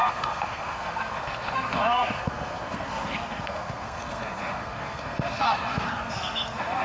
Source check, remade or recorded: remade